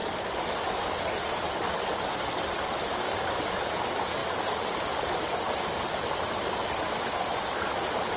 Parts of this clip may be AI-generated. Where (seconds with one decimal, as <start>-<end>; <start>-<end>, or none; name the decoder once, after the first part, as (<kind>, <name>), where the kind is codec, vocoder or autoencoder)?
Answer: 2.9-3.5 (codec, DAC)